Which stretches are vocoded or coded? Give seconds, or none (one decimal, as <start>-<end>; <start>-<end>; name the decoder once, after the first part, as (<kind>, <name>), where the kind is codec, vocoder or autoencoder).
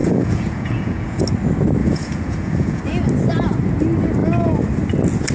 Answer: 0.0-1.2 (vocoder, Vocos); 1.8-2.8